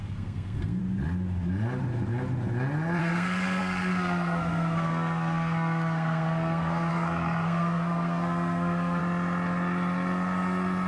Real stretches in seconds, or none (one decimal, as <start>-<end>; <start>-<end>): 0.8-3.0; 9.0-10.9